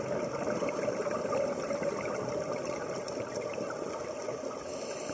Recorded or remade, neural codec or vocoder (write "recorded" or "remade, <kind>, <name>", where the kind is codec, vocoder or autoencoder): recorded